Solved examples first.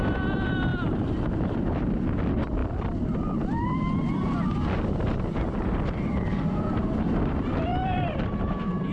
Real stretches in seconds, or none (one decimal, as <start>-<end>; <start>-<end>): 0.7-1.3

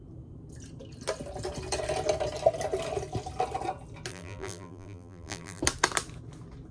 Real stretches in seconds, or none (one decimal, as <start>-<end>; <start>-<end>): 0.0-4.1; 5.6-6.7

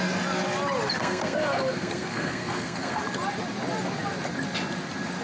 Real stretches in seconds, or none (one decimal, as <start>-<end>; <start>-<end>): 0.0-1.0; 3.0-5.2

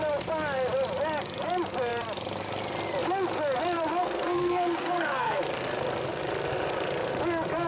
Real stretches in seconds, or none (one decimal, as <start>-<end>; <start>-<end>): 0.0-4.0; 5.4-7.7